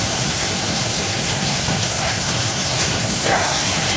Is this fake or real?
fake